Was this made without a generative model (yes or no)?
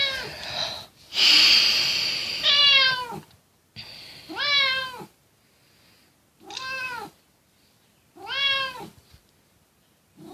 yes